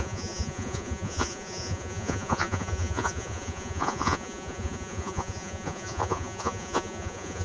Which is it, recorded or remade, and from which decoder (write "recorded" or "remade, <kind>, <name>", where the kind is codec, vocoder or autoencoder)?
remade, vocoder, Vocos